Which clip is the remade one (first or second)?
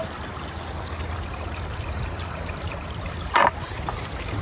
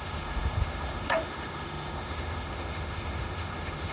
second